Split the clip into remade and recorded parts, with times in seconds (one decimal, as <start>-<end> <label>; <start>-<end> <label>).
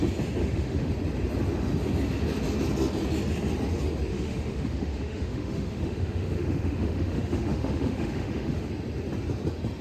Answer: 0.0-0.4 recorded; 0.4-0.9 remade; 0.9-4.1 recorded; 4.1-8.7 remade; 8.7-9.8 recorded